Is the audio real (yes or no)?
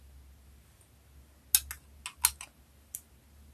yes